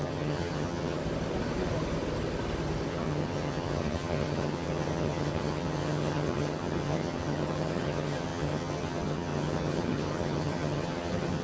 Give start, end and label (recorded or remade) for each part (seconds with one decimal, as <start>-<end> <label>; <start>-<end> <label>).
0.0-1.0 remade; 1.0-2.9 recorded; 2.9-11.4 remade